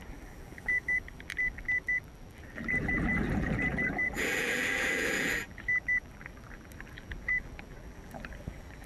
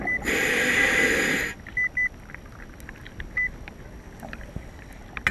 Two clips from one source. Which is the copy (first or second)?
first